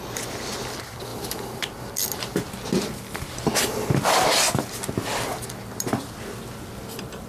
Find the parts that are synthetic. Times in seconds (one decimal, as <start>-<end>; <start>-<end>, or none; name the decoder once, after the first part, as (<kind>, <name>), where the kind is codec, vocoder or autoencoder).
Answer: 1.1-3.6 (vocoder, BigVGAN v2); 5.1-6.0